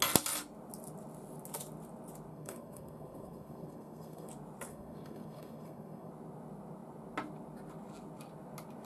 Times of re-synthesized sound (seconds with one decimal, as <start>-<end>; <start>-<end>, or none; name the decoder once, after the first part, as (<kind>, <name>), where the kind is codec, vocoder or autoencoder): 2.3-4.3 (codec, SNAC); 4.7-6.1